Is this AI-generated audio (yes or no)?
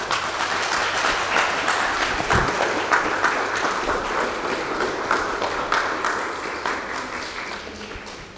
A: no